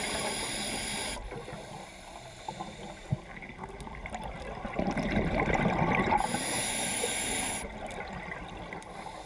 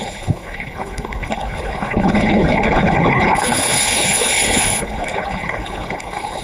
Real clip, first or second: first